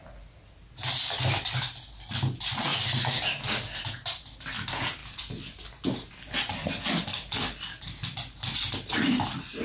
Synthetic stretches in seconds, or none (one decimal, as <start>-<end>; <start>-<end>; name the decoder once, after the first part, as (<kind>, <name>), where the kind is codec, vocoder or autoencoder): none